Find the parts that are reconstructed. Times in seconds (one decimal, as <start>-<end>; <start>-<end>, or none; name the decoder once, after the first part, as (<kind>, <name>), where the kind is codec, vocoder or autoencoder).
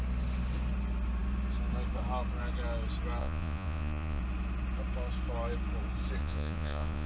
3.2-4.2 (vocoder, Vocos); 6.2-7.1